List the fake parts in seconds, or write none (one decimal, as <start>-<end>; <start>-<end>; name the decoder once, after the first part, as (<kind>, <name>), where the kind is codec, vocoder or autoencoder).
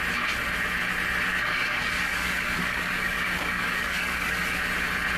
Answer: 1.3-4.4 (codec, DAC)